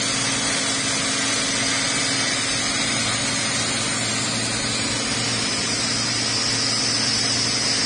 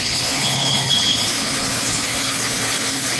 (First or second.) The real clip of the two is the first